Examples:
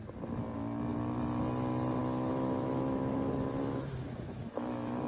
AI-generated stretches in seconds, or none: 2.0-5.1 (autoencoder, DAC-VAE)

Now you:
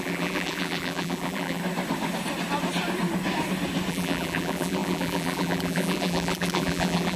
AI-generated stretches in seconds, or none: 0.0-1.6 (vocoder, BigVGAN v2); 3.9-7.2